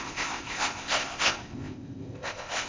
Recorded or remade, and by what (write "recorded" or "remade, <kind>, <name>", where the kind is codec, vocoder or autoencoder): remade, codec, ZipCodec